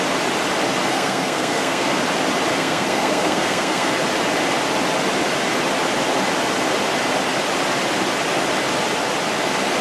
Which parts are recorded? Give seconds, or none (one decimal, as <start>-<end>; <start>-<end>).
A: 0.0-0.9; 2.0-2.5; 3.9-9.8